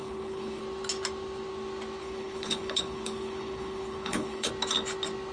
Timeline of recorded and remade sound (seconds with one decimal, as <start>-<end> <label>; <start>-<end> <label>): 0.0-0.6 remade; 0.6-2.0 recorded; 2.0-4.5 remade; 4.5-5.3 recorded